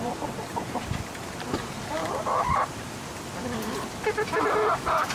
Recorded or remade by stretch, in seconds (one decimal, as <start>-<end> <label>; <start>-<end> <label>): 0.0-2.0 remade; 2.0-5.1 recorded